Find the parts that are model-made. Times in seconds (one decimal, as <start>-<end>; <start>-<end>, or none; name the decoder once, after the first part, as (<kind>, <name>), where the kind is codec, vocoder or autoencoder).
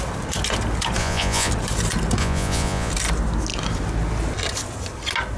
1.0-1.5 (vocoder, Vocos); 2.2-2.9